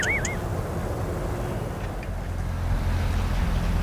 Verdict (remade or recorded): recorded